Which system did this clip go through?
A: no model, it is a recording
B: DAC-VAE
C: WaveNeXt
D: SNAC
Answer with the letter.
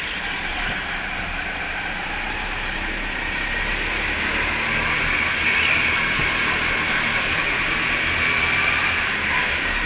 A